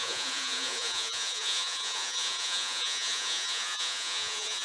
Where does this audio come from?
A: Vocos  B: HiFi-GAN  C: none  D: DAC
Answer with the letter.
A